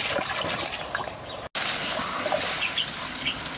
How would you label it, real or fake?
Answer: real